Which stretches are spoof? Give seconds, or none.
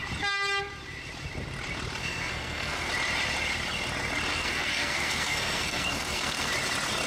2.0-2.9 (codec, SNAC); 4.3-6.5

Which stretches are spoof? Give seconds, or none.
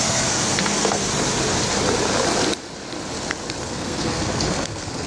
0.0-1.0 (codec, SNAC); 3.6-5.1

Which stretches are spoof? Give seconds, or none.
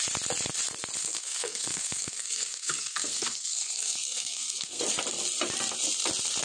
1.0-4.8 (codec, SNAC)